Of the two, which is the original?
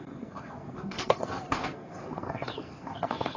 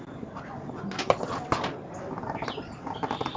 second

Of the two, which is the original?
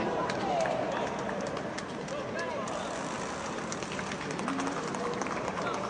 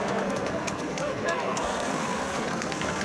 first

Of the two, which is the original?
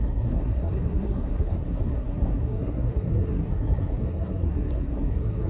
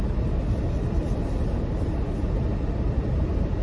second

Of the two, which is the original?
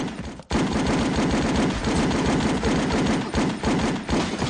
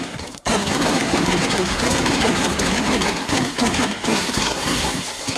first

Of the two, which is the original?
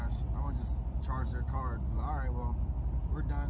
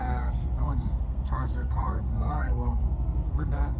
first